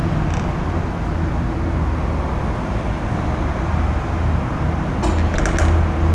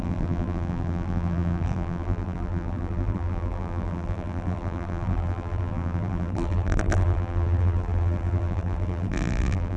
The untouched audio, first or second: first